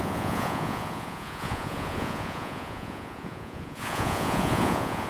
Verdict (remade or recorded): remade